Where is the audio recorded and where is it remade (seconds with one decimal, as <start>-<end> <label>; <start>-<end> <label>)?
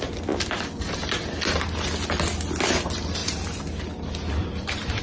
0.0-3.2 recorded; 3.2-5.0 remade